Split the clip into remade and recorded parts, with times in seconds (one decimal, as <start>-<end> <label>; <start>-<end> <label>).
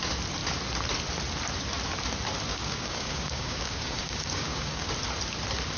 0.0-2.5 recorded; 2.5-4.9 remade; 4.9-5.8 recorded